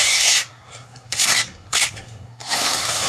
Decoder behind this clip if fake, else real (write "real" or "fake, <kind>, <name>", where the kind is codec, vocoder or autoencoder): fake, codec, SNAC